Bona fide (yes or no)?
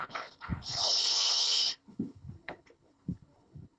no